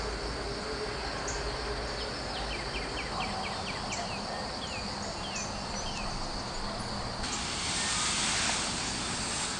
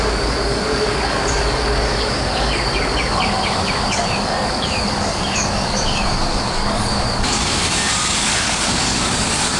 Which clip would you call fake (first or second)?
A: second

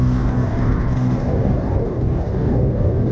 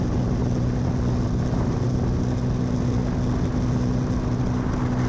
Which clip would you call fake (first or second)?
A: first